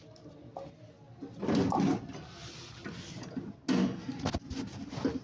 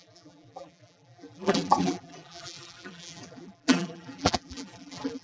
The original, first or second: first